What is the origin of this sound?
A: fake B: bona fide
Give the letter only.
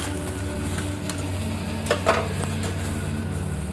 B